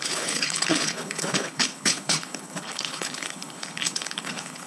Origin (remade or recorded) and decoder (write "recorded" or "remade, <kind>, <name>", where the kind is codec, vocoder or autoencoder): remade, codec, HILCodec